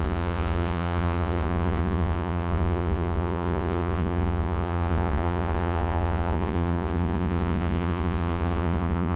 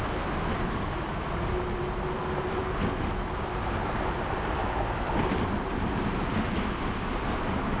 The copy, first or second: first